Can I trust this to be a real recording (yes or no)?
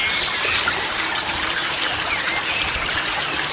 yes